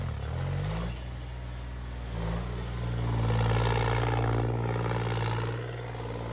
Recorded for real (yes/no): yes